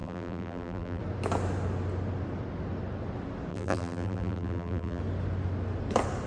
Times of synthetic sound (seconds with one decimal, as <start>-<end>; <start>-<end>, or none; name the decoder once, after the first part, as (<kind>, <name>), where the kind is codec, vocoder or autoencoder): 0.0-1.0 (vocoder, BigVGAN v2); 3.5-5.0